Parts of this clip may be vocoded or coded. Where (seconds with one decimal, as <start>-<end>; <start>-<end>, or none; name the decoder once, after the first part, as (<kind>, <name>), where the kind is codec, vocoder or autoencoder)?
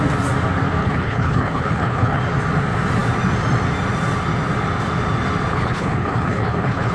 0.8-2.2 (codec, HILCodec); 5.5-6.9